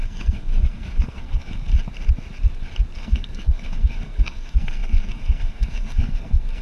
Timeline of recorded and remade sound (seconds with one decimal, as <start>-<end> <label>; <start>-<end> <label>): 0.0-1.7 remade; 1.7-3.0 recorded; 3.0-6.6 remade